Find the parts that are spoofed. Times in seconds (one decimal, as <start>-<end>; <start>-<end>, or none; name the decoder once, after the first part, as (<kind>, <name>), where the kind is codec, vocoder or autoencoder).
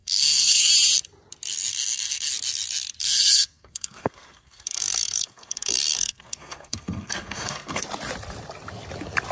0.0-0.7 (codec, SNAC); 1.7-2.3; 3.0-7.8